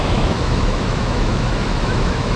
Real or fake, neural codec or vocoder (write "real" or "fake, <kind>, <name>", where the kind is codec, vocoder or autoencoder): fake, autoencoder, DAC-VAE